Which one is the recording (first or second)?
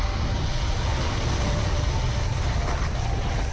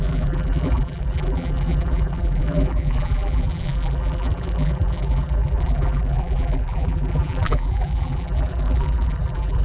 first